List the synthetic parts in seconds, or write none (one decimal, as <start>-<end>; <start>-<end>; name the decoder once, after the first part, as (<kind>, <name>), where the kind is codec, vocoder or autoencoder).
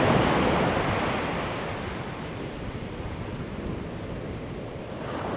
none